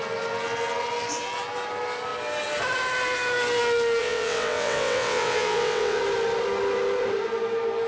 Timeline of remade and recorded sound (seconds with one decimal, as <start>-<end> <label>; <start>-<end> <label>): 0.0-4.0 recorded; 4.0-6.0 remade; 6.0-7.9 recorded